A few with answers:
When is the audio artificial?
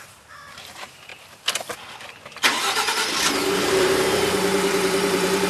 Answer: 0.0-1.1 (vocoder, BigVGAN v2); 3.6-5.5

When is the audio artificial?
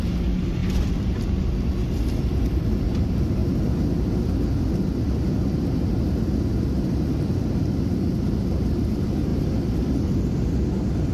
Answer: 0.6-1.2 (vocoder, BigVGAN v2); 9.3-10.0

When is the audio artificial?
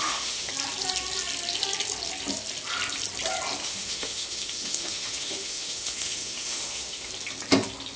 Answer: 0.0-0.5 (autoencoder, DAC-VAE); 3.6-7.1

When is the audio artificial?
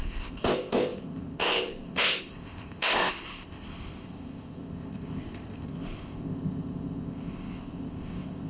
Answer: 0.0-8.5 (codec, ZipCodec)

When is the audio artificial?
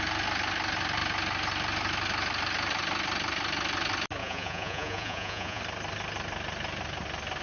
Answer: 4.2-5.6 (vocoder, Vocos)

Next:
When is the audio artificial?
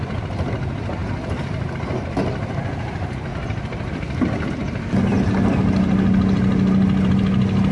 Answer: none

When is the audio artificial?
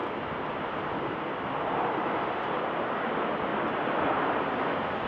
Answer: none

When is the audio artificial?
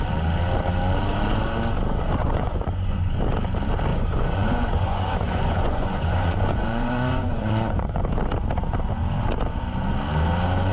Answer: 2.2-3.2 (vocoder, Vocos); 3.9-8.0